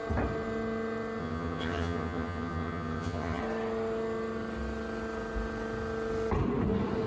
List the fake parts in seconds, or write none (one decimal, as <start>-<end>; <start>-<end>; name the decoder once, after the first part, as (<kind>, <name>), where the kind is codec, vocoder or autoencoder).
1.2-3.4 (vocoder, HiFi-GAN)